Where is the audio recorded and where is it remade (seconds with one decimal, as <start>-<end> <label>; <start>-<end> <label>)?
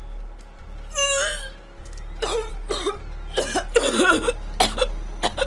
0.0-5.5 recorded